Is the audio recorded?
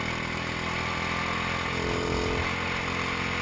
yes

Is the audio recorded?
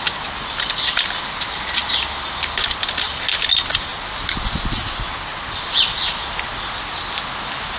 yes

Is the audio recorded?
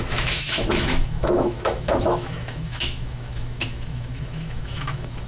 no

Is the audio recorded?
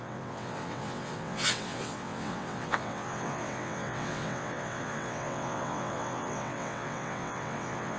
no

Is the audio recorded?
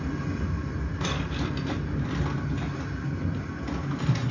yes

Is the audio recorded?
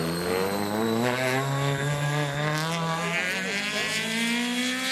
yes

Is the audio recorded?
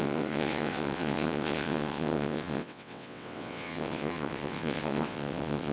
no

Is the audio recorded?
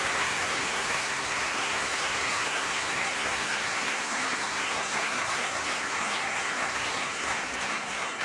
no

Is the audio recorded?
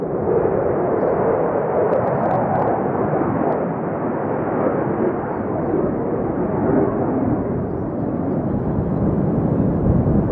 yes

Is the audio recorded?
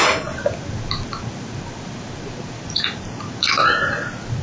yes